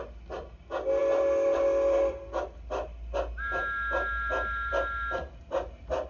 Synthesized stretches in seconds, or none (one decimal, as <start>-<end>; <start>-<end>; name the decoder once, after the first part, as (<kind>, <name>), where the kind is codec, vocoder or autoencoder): none